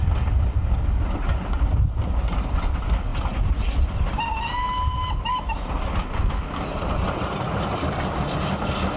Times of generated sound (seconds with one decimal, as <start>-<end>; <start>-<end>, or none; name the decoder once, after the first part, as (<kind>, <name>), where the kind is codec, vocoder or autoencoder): 3.1-3.6 (vocoder, BigVGAN v2)